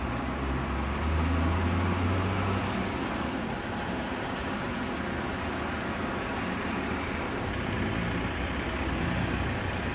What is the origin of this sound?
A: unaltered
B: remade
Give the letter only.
A